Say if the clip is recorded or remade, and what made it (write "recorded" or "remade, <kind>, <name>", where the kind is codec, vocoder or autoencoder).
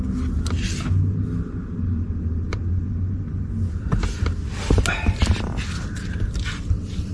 recorded